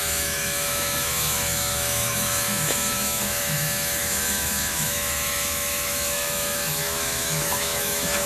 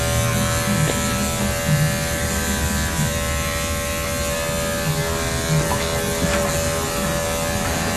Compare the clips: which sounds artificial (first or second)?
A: first